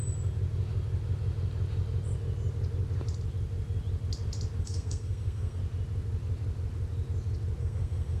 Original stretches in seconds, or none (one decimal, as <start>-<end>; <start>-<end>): 0.0-4.6; 5.6-7.6